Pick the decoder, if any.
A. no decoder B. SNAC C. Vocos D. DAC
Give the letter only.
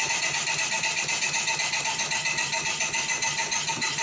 A